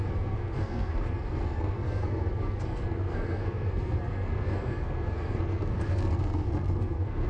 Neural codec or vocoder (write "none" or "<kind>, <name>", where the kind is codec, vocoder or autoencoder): codec, SNAC